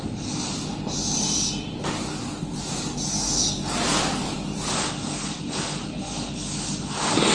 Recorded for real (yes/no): yes